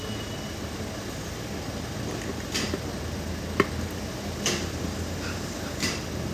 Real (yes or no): yes